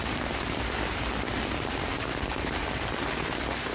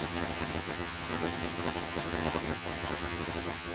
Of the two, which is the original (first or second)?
first